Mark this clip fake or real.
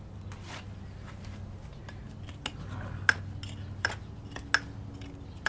real